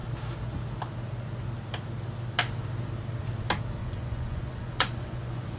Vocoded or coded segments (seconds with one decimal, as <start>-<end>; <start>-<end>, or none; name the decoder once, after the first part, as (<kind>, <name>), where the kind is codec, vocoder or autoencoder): 3.8-5.6 (vocoder, Vocos)